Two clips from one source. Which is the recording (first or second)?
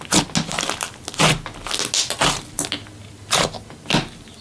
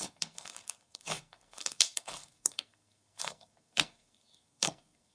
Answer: first